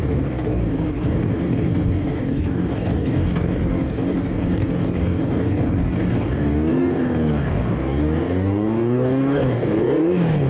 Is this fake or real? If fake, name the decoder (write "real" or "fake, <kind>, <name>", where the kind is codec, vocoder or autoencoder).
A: fake, codec, DAC